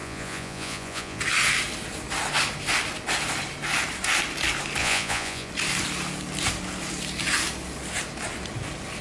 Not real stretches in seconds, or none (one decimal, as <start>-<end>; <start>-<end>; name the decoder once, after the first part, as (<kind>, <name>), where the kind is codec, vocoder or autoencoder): 0.0-1.2 (vocoder, Vocos); 4.8-5.5